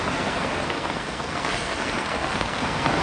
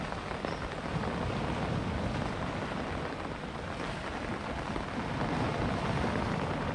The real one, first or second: second